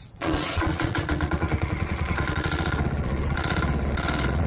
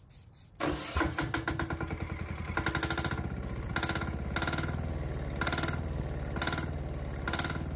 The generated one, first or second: first